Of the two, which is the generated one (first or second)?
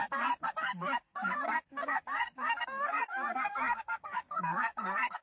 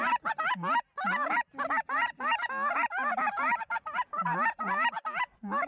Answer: first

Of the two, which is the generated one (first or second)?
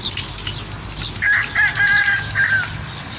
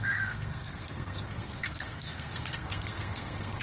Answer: second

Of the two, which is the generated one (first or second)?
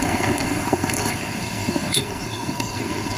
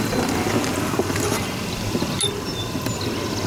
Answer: first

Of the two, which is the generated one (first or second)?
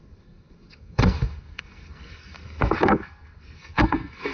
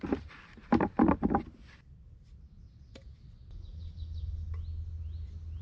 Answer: first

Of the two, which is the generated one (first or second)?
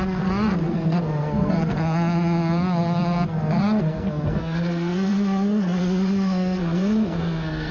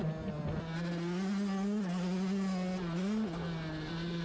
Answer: first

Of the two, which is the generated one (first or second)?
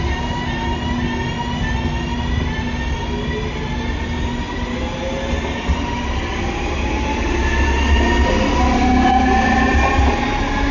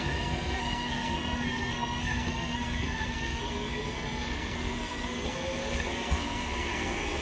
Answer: second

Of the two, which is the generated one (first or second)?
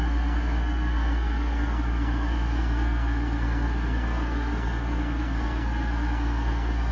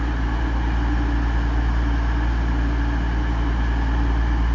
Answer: first